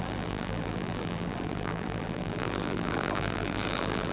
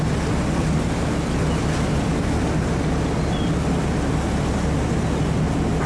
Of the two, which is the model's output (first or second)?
first